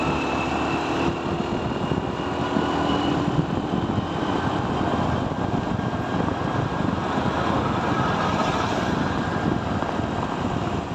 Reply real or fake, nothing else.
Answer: real